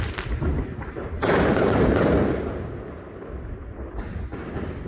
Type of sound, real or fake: real